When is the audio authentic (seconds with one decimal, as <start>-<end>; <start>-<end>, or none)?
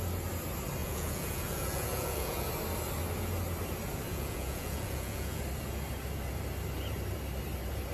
0.0-0.8; 2.5-4.1; 5.4-7.9